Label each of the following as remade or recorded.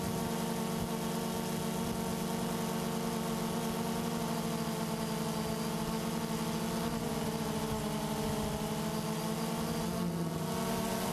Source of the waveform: recorded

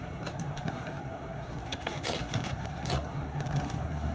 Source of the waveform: remade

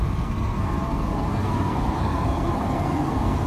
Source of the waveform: remade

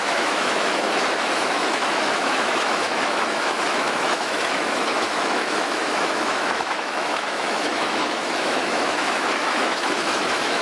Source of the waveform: remade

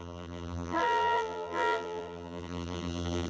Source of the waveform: remade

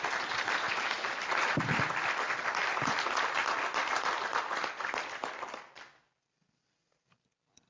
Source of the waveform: recorded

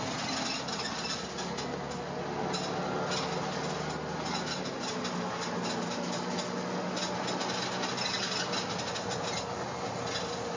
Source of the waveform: recorded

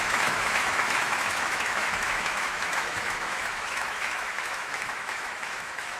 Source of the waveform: remade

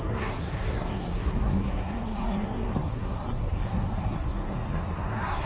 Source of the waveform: remade